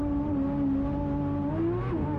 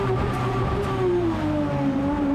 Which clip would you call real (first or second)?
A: first